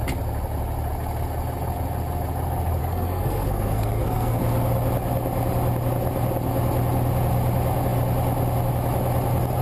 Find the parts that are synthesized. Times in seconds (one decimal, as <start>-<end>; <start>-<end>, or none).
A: 2.8-4.4